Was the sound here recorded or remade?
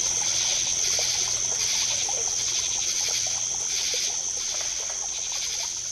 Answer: recorded